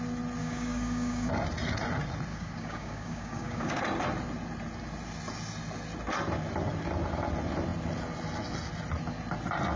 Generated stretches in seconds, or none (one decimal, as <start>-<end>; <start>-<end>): 0.4-1.3; 2.3-3.8